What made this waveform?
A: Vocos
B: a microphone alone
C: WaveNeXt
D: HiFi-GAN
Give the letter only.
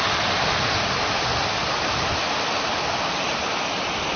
B